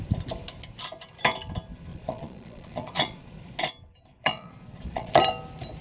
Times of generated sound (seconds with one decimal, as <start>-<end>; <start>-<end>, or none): 1.9-3.3; 4.2-5.2